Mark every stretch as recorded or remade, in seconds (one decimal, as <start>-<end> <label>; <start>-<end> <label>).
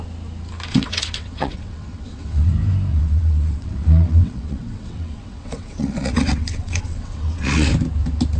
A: 0.0-0.7 recorded; 0.7-2.5 remade; 2.5-2.9 recorded; 2.9-7.7 remade; 7.7-8.4 recorded